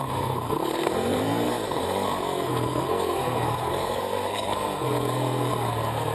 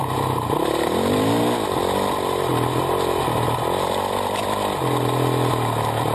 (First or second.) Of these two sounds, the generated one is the first